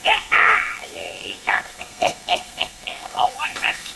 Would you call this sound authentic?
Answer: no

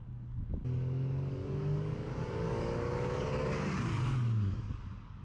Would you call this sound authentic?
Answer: no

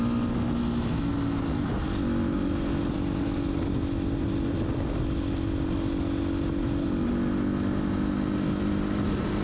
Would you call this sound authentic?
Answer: yes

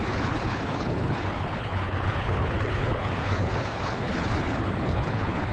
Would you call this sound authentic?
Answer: no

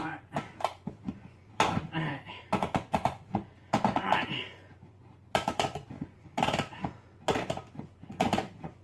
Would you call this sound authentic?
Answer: no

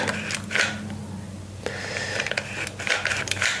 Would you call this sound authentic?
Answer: yes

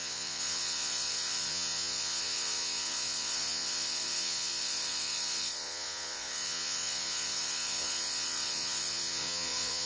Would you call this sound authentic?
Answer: no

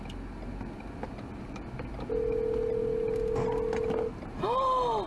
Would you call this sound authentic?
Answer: yes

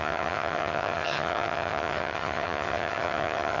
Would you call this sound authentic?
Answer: no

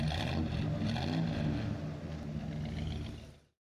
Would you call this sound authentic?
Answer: yes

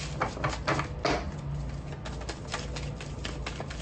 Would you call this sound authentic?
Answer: yes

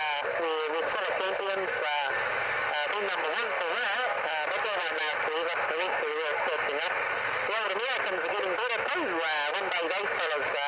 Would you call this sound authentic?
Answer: yes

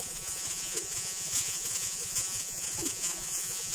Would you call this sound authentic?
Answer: no